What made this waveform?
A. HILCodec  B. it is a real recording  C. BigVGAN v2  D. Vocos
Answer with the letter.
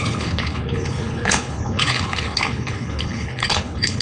A